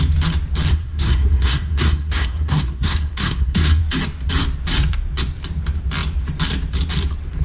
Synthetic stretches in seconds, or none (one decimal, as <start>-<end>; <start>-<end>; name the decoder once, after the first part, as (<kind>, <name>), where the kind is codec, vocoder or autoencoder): 0.7-3.8 (codec, SNAC)

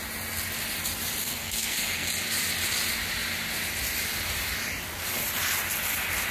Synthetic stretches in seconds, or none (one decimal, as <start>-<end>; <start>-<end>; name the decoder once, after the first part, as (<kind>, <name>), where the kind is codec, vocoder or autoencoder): 1.2-2.1 (codec, SNAC)

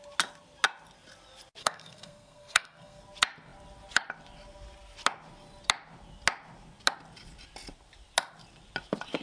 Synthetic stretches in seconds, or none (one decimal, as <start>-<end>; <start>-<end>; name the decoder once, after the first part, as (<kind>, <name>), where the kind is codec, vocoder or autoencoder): 1.6-3.0 (codec, SNAC)

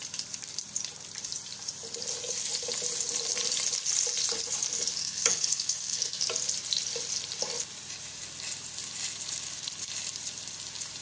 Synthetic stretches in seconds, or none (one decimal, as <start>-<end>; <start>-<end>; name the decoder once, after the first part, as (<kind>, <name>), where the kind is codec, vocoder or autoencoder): 5.0-6.2 (codec, SNAC)

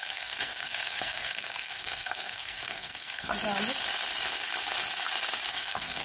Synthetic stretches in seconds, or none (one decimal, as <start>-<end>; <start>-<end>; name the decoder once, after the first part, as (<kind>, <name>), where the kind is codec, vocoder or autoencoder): 0.0-3.3 (codec, SNAC); 5.5-6.0

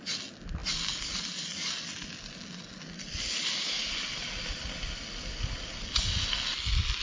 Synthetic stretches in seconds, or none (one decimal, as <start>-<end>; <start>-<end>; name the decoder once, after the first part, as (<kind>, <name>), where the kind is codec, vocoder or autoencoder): none